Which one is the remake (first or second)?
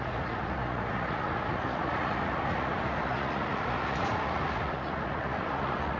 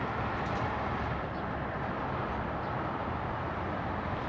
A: first